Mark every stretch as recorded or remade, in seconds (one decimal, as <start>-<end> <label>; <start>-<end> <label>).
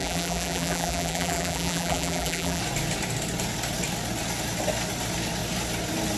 0.0-2.6 remade; 2.6-6.2 recorded